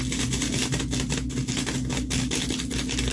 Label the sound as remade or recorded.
recorded